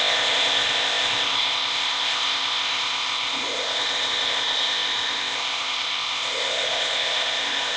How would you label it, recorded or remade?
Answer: remade